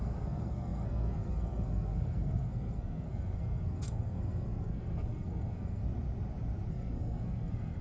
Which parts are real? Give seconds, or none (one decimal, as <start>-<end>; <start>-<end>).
5.8-6.7